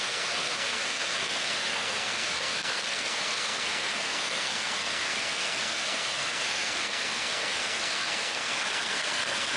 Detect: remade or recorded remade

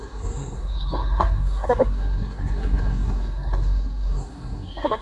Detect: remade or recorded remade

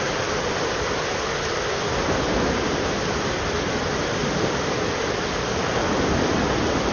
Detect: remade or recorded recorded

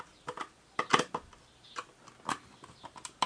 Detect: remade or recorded recorded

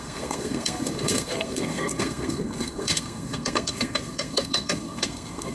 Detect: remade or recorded remade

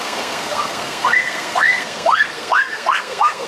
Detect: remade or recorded remade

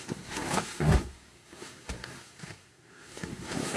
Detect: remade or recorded remade